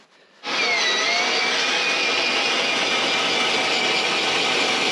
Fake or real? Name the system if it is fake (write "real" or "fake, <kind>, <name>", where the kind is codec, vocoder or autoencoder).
real